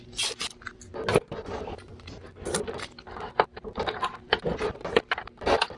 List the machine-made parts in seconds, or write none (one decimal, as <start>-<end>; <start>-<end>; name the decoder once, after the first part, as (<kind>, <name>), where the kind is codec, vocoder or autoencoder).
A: none